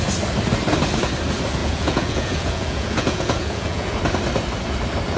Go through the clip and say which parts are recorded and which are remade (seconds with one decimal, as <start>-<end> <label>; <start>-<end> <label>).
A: 0.0-1.6 recorded; 1.6-4.0 remade; 4.0-5.2 recorded